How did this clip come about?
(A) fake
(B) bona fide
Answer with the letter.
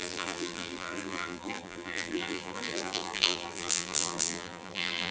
A